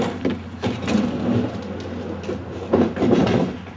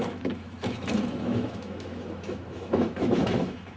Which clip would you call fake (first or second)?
second